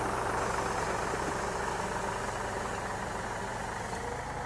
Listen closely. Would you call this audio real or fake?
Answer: real